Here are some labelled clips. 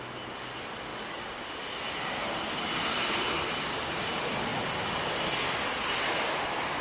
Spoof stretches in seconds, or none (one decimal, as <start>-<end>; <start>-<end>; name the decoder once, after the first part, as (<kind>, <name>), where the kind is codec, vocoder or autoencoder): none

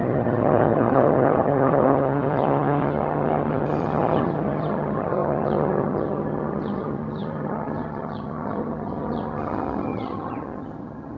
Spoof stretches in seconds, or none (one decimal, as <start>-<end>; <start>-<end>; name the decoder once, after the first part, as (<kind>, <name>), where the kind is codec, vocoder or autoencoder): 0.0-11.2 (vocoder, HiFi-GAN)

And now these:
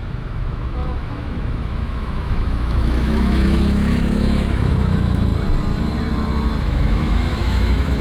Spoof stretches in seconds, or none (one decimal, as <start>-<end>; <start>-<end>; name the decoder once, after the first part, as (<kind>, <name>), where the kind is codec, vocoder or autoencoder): 0.0-5.3 (autoencoder, DAC-VAE); 6.6-8.0

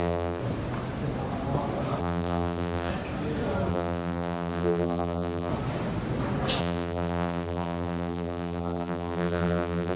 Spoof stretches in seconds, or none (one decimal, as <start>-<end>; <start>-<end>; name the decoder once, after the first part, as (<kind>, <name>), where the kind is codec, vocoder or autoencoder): 0.0-0.4 (vocoder, BigVGAN v2); 2.0-2.9; 3.7-5.5; 6.6-10.0

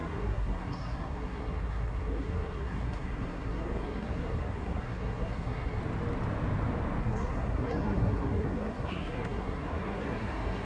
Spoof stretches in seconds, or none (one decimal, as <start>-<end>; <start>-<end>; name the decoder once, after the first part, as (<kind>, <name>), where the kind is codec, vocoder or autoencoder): 0.0-5.8 (codec, SNAC); 7.0-10.6